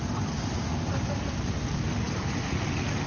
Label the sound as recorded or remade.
recorded